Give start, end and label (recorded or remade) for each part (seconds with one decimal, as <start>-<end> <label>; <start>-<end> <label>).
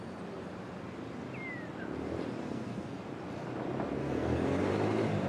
0.0-2.4 recorded; 2.4-3.0 remade; 3.0-4.0 recorded; 4.0-4.7 remade; 4.7-5.3 recorded